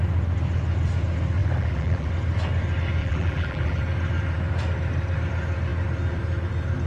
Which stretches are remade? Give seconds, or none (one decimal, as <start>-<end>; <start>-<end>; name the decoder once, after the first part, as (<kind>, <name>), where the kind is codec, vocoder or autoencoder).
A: 1.4-2.1 (vocoder, BigVGAN v2); 3.0-3.8